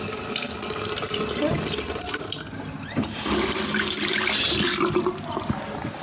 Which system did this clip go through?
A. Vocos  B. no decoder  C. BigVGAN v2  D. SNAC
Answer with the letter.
B